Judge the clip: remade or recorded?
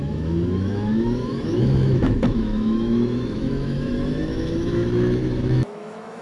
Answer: remade